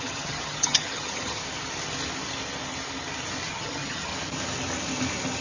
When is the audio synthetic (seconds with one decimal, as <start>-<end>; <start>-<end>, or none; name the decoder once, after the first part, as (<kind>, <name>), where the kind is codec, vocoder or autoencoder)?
0.0-1.4 (vocoder, HiFi-GAN); 3.5-4.1